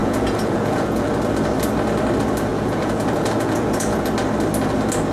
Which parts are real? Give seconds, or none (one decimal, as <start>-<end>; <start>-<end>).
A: 1.1-2.5; 4.0-5.1